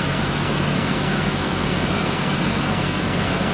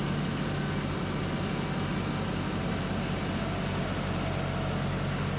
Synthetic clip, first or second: first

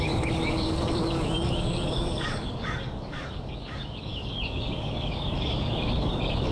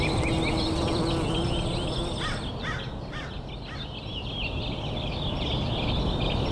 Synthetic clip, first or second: first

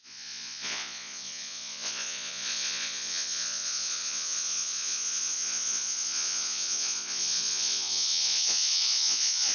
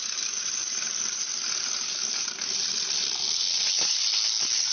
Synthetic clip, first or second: first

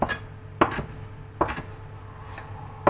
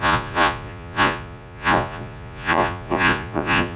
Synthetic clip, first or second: second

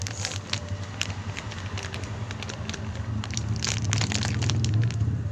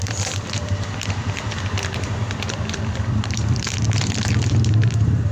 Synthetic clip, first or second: second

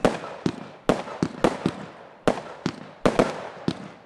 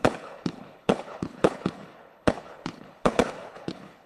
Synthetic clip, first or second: second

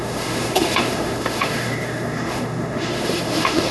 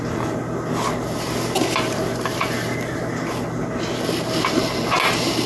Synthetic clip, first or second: first